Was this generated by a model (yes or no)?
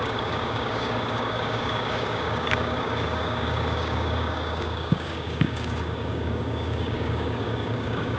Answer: yes